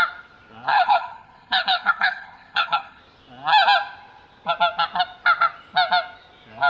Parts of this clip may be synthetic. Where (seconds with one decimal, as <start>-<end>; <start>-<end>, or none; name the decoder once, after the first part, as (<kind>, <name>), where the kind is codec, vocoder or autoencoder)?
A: 0.7-3.0 (codec, HILCodec)